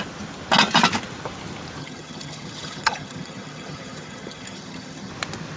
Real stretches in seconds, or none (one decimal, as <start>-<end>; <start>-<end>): 0.0-1.8; 5.1-5.6